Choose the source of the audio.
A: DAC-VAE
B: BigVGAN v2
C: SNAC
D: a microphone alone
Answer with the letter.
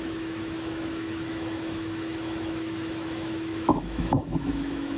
A